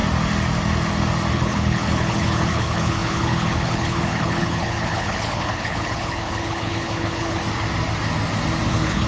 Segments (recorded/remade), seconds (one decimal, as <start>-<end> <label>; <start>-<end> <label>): 0.0-1.3 recorded; 1.3-7.4 remade; 7.4-8.7 recorded; 8.7-9.1 remade